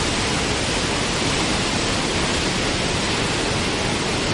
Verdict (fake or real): real